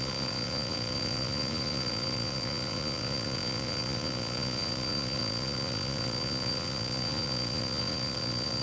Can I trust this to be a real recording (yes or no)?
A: no